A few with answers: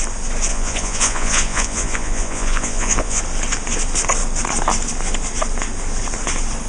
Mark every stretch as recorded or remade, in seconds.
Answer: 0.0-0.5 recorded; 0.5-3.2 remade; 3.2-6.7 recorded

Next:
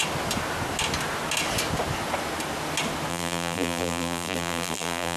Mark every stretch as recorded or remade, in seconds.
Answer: 0.0-3.1 recorded; 3.1-5.2 remade

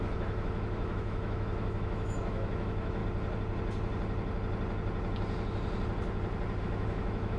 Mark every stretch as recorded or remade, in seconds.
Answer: 0.0-3.0 remade; 3.0-6.6 recorded; 6.6-7.4 remade

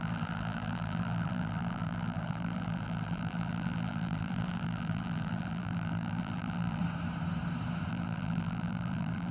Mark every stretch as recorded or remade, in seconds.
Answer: 0.0-6.8 remade; 6.8-7.9 recorded; 7.9-9.3 remade

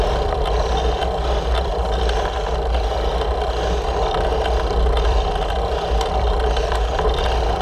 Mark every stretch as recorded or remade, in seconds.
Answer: 0.0-7.6 recorded

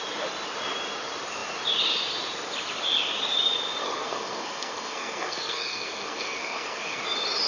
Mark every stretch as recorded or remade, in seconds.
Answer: 0.0-3.8 recorded; 3.8-7.0 remade; 7.0-7.5 recorded